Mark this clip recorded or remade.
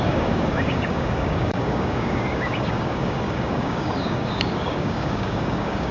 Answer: remade